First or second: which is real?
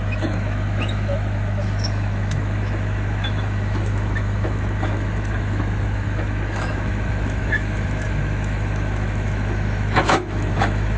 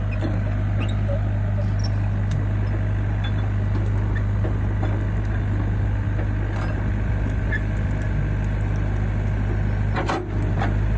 second